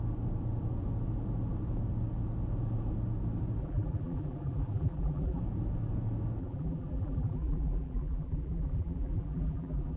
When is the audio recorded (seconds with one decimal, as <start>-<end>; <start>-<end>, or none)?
0.0-3.6; 5.4-6.4